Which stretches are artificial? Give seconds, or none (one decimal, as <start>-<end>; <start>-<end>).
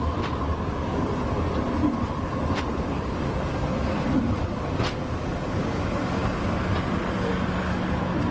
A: none